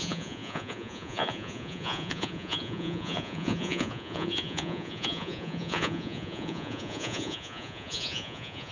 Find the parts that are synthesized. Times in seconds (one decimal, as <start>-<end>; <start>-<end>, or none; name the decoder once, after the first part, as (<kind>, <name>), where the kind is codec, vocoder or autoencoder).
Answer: 0.0-8.7 (vocoder, Vocos)